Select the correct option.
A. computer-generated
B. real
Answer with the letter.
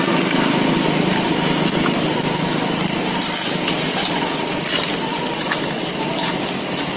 B